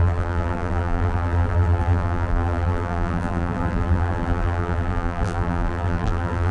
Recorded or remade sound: remade